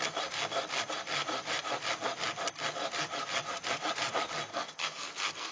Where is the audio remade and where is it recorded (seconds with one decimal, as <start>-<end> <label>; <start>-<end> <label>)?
0.0-4.5 recorded; 4.5-5.5 remade